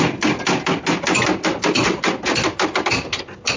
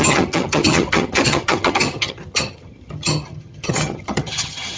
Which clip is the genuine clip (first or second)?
first